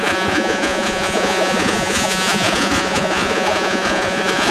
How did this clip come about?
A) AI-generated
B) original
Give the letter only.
A